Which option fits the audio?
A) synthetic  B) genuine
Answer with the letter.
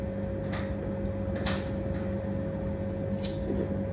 B